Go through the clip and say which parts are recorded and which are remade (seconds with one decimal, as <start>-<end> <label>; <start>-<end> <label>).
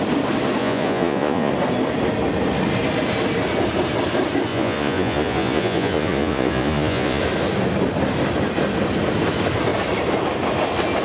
0.0-0.6 recorded; 0.6-1.5 remade; 1.5-4.5 recorded; 4.5-7.2 remade; 7.2-11.0 recorded